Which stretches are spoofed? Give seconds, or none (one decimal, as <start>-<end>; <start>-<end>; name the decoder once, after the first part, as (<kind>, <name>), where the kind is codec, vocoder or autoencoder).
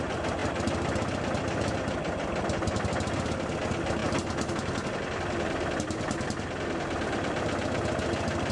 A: none